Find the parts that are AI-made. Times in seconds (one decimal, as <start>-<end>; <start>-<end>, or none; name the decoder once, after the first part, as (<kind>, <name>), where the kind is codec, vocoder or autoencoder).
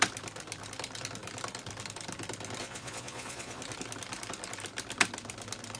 2.6-3.6 (vocoder, Vocos)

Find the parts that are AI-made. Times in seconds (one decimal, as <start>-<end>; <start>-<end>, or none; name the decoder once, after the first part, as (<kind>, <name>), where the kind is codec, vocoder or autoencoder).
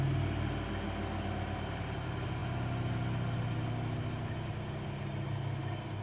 none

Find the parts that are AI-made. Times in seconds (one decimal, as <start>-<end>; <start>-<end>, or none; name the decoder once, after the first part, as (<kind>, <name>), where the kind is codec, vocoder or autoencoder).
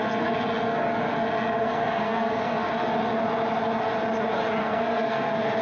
1.6-2.7 (codec, SNAC); 4.6-5.6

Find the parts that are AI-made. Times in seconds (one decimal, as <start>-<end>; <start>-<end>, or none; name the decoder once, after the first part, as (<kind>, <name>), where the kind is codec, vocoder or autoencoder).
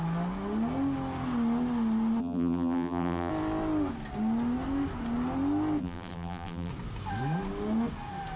2.2-3.3 (vocoder, BigVGAN v2); 5.8-6.7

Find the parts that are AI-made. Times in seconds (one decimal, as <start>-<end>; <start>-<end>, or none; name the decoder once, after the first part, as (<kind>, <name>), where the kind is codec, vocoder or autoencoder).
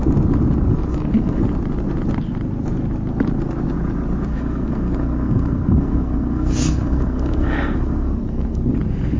0.9-1.4 (codec, SNAC); 4.3-8.7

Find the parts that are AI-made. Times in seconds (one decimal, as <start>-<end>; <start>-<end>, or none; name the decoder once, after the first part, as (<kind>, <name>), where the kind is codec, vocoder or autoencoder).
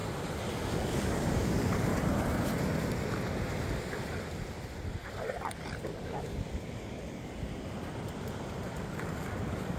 0.7-1.9 (codec, DAC); 6.0-7.5; 8.7-9.8